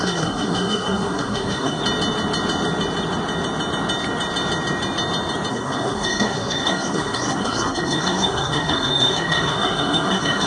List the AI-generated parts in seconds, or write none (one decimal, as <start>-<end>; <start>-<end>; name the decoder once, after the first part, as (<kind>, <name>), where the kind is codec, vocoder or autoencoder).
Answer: 0.0-1.8 (codec, SNAC); 5.5-10.5